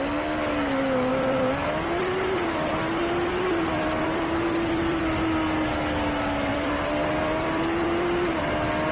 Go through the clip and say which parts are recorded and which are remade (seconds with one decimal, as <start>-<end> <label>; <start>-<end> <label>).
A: 0.0-1.1 recorded; 1.1-5.0 remade; 5.0-6.5 recorded; 6.5-8.4 remade; 8.4-8.9 recorded